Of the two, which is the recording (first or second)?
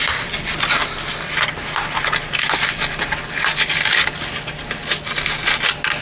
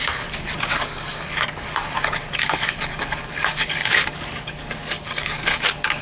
first